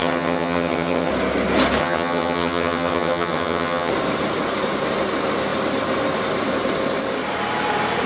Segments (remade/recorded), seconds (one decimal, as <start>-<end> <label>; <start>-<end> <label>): 0.0-1.1 remade; 1.1-1.8 recorded; 1.8-3.9 remade; 3.9-8.1 recorded